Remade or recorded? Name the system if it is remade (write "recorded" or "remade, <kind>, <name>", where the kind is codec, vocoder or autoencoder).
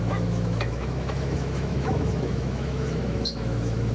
remade, autoencoder, DAC-VAE